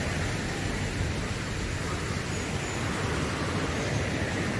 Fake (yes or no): no